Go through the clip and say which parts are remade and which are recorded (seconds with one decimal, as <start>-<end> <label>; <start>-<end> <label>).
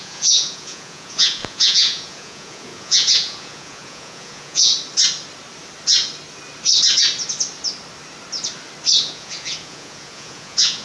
0.0-4.7 remade; 4.7-9.0 recorded; 9.0-10.8 remade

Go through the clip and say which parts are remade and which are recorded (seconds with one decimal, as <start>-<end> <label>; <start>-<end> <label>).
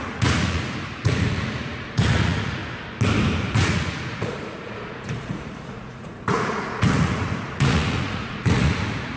0.0-2.6 remade; 2.6-3.4 recorded; 3.4-9.2 remade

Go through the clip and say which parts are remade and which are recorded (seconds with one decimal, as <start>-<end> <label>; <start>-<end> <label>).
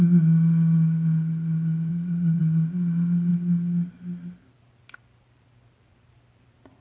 0.0-1.9 recorded; 1.9-2.4 remade; 2.4-6.8 recorded